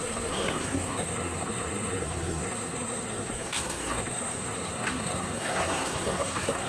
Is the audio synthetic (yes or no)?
yes